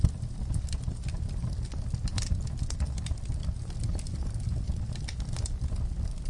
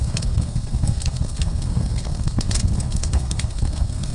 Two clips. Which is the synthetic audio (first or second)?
second